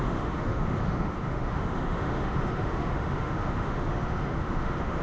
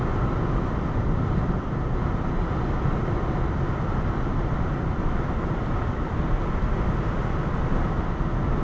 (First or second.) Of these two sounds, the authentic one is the second